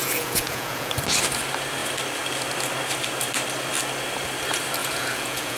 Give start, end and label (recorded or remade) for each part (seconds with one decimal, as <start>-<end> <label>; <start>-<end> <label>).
0.0-0.9 remade; 0.9-4.8 recorded; 4.8-5.6 remade